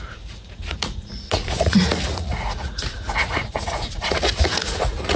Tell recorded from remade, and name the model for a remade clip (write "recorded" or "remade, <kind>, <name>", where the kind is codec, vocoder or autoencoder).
remade, vocoder, Vocos